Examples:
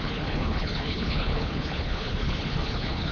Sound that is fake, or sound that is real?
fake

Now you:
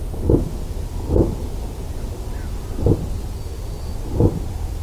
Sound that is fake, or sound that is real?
real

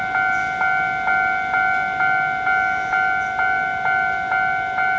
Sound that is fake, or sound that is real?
real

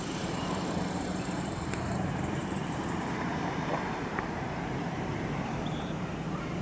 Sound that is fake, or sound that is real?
fake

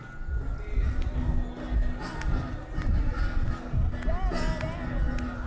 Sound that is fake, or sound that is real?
real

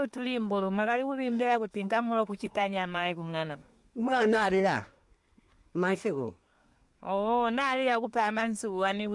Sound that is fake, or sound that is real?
fake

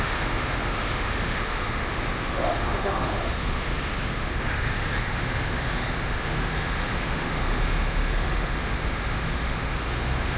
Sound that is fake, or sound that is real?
fake